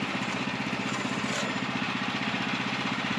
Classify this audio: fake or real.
fake